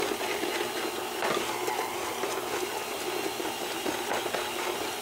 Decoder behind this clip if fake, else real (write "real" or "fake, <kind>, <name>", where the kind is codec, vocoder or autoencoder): real